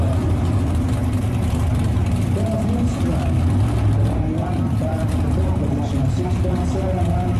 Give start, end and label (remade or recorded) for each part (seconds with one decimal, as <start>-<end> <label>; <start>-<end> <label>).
0.0-7.4 recorded